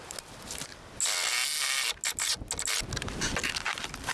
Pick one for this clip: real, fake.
real